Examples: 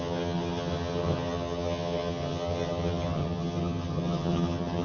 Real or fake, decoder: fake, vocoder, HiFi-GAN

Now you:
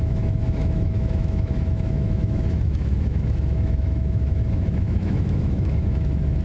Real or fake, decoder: fake, autoencoder, DAC-VAE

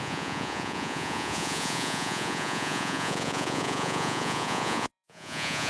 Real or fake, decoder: fake, vocoder, Vocos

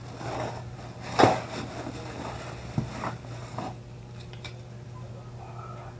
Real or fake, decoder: real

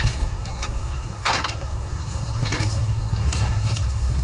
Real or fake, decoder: fake, codec, SNAC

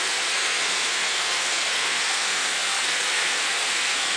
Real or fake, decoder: fake, codec, SNAC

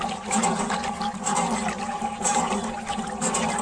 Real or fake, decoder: real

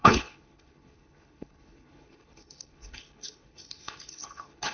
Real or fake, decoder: fake, codec, HILCodec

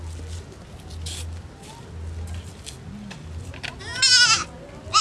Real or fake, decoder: real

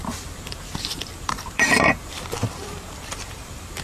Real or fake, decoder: fake, vocoder, BigVGAN v2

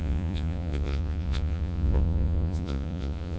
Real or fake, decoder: fake, vocoder, Vocos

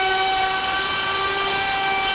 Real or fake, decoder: real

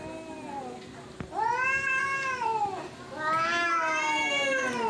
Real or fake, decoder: real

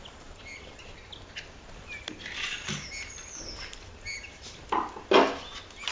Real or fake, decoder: real